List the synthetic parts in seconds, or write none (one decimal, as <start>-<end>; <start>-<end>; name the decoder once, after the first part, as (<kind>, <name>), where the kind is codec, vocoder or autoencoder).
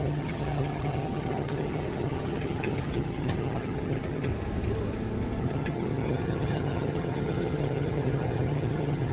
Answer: 0.0-4.3 (vocoder, HiFi-GAN); 5.4-9.1